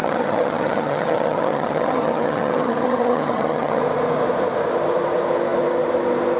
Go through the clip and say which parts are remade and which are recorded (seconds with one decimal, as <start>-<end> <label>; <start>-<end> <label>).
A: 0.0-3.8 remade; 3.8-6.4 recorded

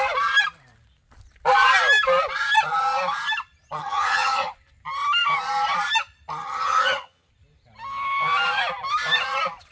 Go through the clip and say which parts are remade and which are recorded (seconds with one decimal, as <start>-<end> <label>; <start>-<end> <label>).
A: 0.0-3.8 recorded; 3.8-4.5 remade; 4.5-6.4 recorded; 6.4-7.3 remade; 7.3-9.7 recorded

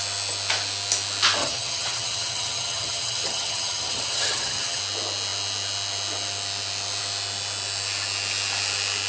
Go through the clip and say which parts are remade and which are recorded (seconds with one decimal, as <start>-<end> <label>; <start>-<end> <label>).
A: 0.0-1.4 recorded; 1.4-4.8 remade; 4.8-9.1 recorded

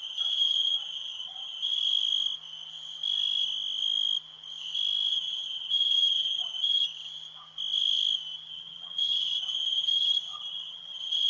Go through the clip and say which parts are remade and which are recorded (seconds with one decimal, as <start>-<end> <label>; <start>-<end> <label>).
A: 0.0-1.8 remade; 1.8-5.1 recorded; 5.1-6.9 remade; 6.9-8.5 recorded; 8.5-11.3 remade

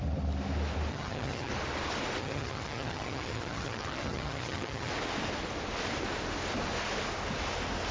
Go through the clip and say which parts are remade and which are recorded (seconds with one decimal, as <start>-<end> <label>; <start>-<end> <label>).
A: 0.0-0.9 recorded; 0.9-1.5 remade; 1.5-2.2 recorded; 2.2-4.9 remade; 4.9-7.9 recorded